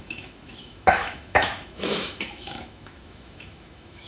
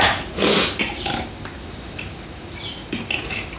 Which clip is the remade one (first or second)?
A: first